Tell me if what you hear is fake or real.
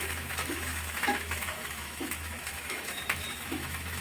fake